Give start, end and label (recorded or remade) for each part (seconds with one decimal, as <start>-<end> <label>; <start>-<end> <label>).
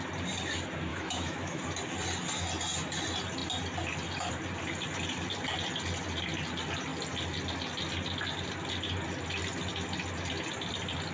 0.0-0.9 recorded; 0.9-1.6 remade; 1.6-11.1 recorded